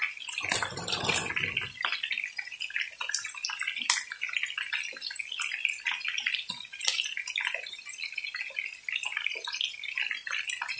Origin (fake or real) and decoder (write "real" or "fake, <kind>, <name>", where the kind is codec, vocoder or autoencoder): real